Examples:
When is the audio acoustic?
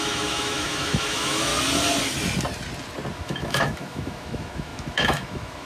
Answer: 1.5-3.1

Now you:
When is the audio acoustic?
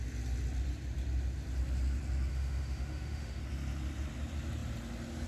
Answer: 0.0-2.3; 3.4-5.3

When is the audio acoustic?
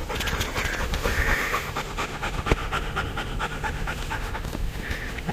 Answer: 0.0-0.8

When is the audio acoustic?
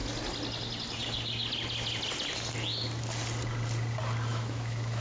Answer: 0.0-4.3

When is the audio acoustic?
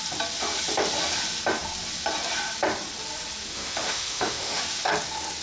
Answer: 0.0-3.5; 4.6-5.4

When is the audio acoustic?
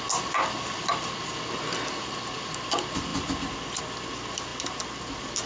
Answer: 0.0-5.5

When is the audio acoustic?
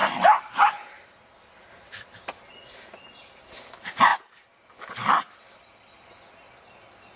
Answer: 0.0-7.2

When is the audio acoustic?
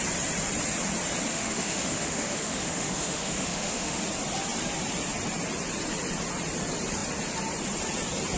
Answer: 0.0-1.3; 4.0-8.4